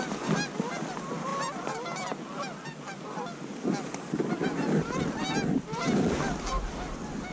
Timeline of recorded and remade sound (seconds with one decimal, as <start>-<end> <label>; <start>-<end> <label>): 0.0-7.3 recorded